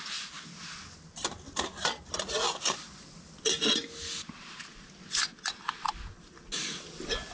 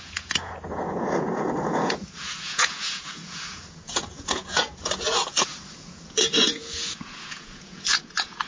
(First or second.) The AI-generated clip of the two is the second